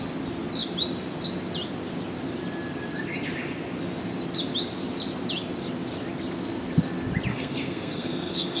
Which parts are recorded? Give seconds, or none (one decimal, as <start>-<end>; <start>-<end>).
0.0-7.3